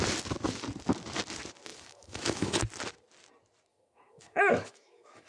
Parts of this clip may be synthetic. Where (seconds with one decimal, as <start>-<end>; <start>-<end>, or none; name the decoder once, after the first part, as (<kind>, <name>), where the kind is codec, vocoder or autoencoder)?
1.7-2.6 (autoencoder, DAC-VAE); 3.7-5.3